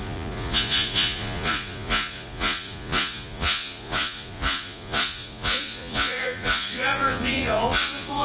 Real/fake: fake